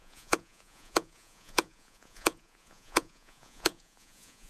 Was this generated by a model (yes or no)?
yes